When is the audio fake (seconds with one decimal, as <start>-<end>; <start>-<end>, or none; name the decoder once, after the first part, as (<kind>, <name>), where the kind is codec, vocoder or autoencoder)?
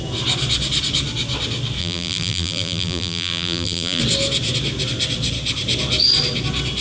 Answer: 1.8-4.0 (vocoder, BigVGAN v2)